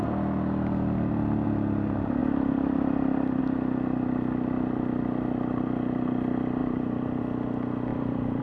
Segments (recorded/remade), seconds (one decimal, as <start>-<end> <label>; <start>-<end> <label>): 0.0-6.6 recorded; 6.6-7.2 remade; 7.2-7.9 recorded; 7.9-8.4 remade